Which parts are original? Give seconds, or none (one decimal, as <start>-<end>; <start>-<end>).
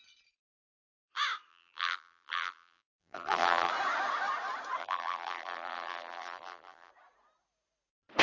0.0-1.5; 3.7-4.8; 6.9-8.2